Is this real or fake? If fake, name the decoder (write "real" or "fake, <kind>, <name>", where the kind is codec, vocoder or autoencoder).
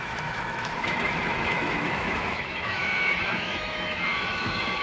fake, autoencoder, DAC-VAE